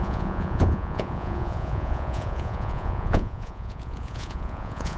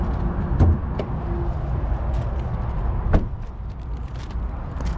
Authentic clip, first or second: second